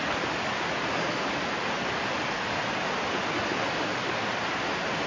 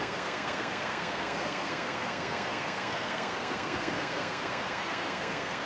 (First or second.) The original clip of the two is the first